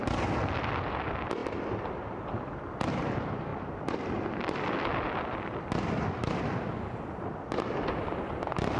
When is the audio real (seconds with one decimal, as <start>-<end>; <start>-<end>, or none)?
0.0-8.8